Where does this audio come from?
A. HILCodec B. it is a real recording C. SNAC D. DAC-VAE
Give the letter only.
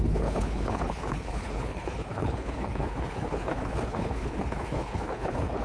A